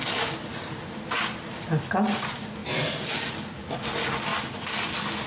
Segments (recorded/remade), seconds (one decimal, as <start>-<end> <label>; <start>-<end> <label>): 0.0-5.3 recorded